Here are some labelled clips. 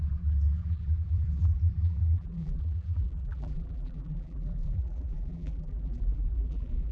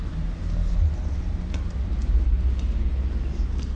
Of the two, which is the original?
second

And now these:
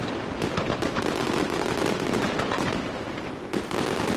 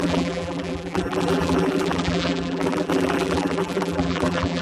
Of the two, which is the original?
first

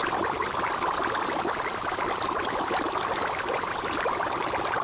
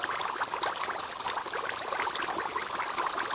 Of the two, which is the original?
first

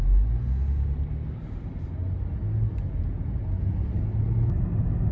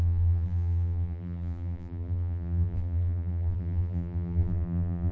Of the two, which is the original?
first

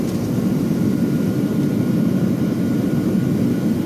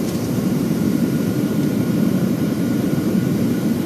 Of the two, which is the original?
first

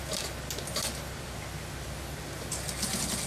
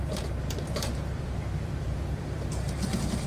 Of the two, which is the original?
first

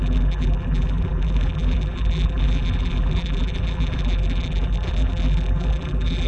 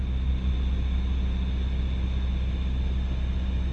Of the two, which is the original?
second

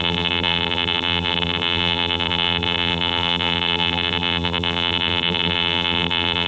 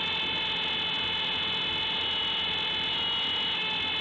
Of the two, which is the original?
second